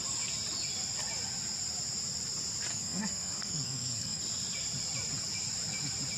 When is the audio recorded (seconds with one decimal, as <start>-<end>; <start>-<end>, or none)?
0.0-2.7; 4.2-6.2